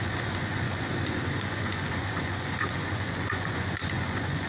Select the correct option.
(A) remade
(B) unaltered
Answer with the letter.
A